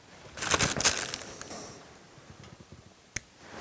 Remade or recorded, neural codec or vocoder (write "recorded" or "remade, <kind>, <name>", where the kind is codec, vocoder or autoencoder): recorded